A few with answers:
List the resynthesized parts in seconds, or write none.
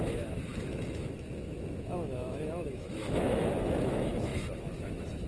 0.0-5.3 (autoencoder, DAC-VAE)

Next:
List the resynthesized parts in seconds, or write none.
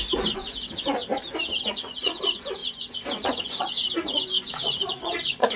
0.0-1.1 (vocoder, Vocos); 1.7-5.6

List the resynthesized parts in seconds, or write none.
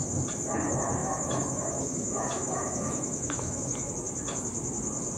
1.0-3.9 (autoencoder, DAC-VAE)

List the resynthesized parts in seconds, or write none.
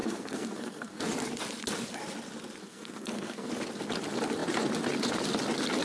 0.0-1.0 (codec, SNAC); 2.6-3.5